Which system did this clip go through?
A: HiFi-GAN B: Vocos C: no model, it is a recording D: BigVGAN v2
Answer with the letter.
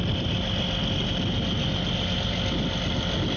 C